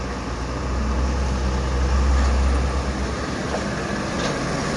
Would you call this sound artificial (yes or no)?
no